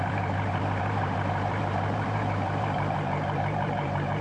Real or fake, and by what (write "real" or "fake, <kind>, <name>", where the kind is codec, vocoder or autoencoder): fake, vocoder, BigVGAN v2